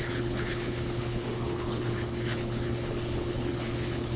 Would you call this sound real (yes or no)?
no